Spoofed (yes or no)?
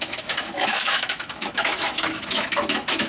yes